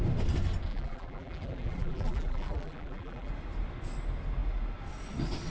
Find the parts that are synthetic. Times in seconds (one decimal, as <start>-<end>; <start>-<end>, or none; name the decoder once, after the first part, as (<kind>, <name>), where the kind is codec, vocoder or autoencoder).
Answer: 0.7-3.3 (vocoder, BigVGAN v2)